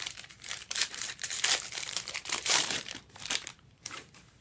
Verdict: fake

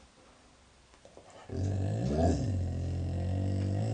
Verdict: real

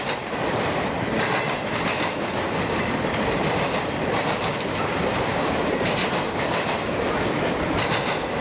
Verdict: real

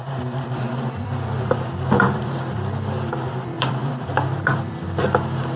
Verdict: fake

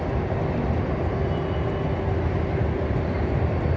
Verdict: real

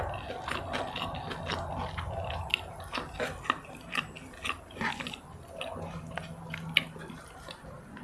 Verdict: real